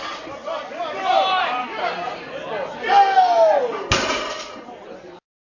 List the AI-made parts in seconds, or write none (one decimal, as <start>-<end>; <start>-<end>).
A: none